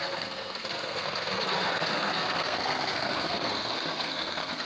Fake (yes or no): yes